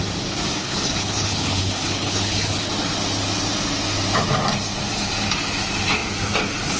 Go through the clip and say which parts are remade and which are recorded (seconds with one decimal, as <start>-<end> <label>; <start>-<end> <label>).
0.0-0.6 recorded; 0.6-2.7 remade; 2.7-6.8 recorded